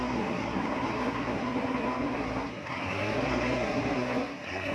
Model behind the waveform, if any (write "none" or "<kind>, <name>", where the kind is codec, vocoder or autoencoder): codec, SNAC